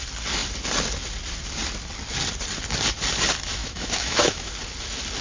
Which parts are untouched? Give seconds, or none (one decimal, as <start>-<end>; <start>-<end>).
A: 0.0-3.6; 4.5-5.2